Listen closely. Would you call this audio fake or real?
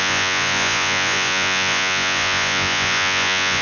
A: fake